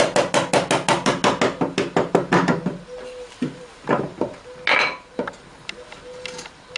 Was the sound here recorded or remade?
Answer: recorded